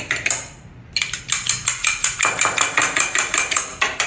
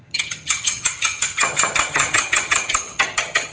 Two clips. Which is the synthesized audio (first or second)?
second